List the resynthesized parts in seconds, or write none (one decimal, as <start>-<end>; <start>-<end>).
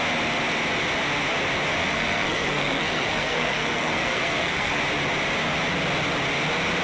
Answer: 1.8-4.8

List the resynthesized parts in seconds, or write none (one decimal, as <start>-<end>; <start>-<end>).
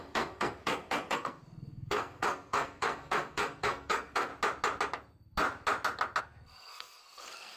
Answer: 0.0-4.3; 6.2-7.6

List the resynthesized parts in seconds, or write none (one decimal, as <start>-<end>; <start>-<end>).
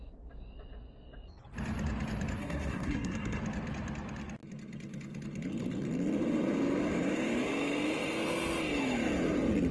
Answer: 2.4-3.4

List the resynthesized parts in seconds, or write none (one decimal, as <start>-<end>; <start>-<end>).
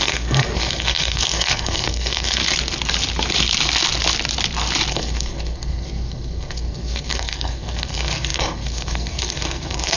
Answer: 0.0-2.4; 4.9-10.0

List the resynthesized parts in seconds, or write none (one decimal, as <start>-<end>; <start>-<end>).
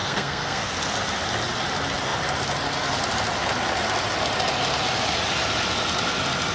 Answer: 0.0-0.7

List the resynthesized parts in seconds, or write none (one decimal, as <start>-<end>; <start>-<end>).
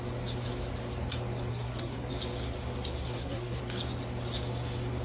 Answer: 1.5-2.1; 3.0-3.6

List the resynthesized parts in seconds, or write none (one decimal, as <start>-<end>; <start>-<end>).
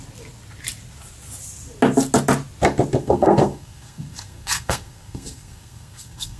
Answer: 3.0-6.4